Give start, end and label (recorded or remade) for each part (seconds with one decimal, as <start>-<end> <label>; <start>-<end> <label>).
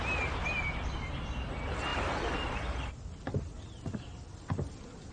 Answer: 0.0-5.1 recorded